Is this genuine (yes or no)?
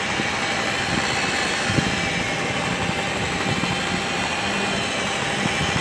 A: yes